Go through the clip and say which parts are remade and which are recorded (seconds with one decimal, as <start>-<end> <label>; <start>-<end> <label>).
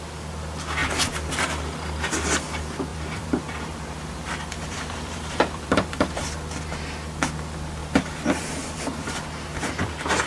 0.0-2.9 recorded; 2.9-5.9 remade; 5.9-7.8 recorded; 7.8-9.1 remade; 9.1-10.3 recorded